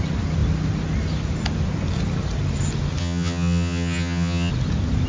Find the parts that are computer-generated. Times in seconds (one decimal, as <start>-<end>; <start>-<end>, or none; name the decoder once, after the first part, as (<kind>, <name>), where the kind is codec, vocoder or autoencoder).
3.0-4.5 (vocoder, HiFi-GAN)